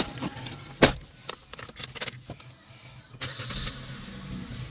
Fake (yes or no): no